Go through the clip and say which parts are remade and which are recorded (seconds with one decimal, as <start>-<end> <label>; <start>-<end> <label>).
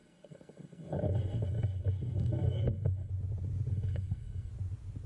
0.0-3.1 remade; 3.1-3.7 recorded; 3.7-4.5 remade; 4.5-5.1 recorded